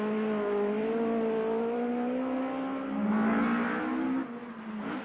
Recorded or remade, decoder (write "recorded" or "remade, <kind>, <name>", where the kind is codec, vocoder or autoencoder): recorded